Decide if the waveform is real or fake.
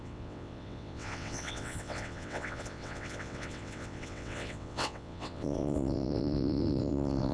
fake